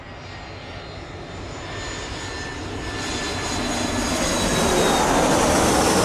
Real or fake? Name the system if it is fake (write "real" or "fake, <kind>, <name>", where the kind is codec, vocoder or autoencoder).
real